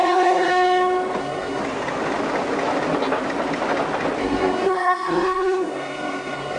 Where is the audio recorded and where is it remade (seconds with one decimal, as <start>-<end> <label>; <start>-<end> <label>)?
0.0-0.5 remade; 0.5-1.2 recorded; 1.2-1.6 remade; 1.6-4.2 recorded; 4.2-6.6 remade